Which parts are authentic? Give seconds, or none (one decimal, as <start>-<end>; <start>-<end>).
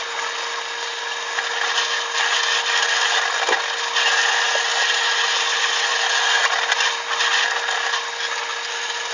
0.0-9.1